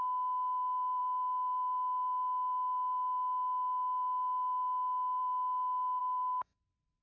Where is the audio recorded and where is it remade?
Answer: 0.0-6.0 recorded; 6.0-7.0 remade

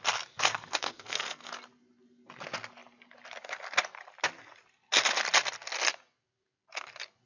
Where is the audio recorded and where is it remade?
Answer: 0.0-0.4 recorded; 0.4-1.5 remade; 1.5-7.3 recorded

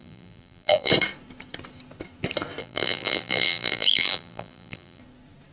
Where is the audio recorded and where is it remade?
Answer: 0.0-0.9 remade; 0.9-2.6 recorded; 2.6-5.0 remade; 5.0-5.5 recorded